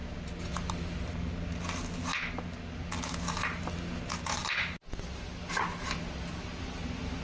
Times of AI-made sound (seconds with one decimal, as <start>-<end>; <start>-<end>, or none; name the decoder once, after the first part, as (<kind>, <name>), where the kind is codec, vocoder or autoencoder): none